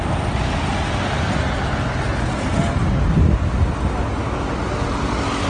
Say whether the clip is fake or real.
real